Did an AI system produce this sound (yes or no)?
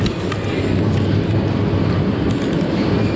no